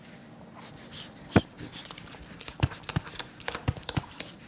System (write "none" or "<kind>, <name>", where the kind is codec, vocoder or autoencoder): none